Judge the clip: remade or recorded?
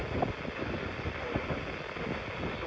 recorded